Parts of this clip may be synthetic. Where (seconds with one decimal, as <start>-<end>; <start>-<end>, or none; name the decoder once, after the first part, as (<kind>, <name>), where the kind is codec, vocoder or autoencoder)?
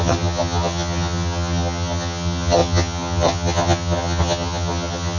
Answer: 0.0-5.2 (vocoder, HiFi-GAN)